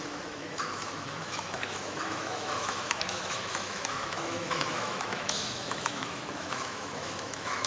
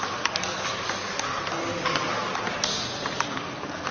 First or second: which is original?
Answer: second